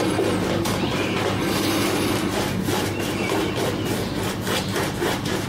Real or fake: real